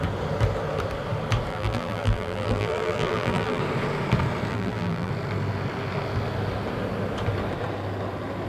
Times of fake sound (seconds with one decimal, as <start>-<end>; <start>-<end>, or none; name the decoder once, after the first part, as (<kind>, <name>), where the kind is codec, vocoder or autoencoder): 1.5-3.6 (vocoder, BigVGAN v2); 4.5-5.1